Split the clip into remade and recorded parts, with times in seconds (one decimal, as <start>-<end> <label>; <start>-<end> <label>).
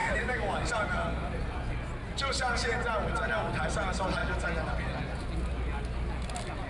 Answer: 0.0-0.7 remade; 0.7-6.7 recorded